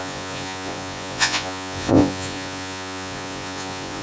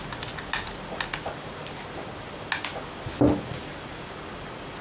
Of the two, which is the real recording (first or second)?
second